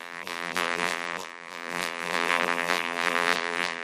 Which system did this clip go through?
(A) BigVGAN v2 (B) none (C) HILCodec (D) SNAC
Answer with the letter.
A